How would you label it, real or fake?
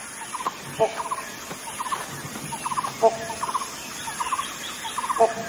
real